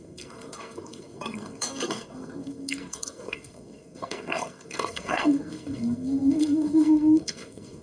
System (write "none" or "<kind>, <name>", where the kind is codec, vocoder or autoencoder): codec, SNAC